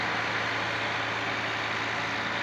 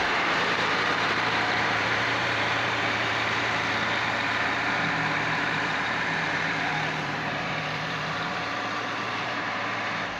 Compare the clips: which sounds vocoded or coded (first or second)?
second